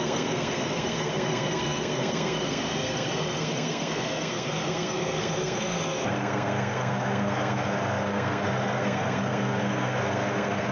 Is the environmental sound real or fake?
fake